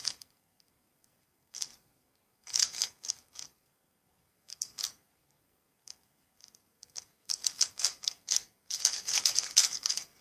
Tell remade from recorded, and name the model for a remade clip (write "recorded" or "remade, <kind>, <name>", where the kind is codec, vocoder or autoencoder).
remade, codec, SNAC